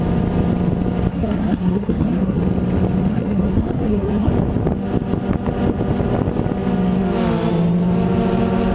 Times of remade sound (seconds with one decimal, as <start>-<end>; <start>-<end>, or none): 1.1-2.4; 3.1-4.3